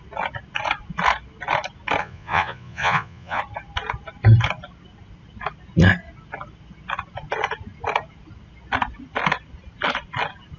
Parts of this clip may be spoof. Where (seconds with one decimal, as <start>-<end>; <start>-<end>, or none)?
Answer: 2.0-3.4